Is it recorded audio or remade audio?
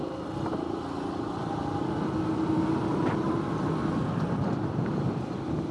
recorded